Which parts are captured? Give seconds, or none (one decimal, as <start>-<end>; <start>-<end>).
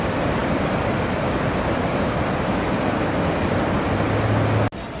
0.0-5.0